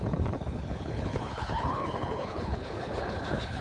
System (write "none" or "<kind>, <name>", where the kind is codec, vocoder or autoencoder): codec, HILCodec